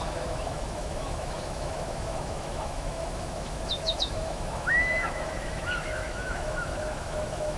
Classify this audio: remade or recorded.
remade